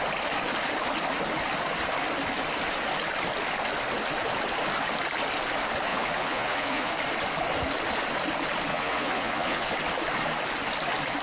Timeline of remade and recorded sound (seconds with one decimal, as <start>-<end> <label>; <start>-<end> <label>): 0.0-5.9 recorded; 5.9-6.9 remade; 6.9-8.7 recorded; 8.7-9.7 remade; 9.7-11.2 recorded